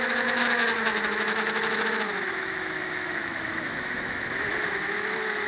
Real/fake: fake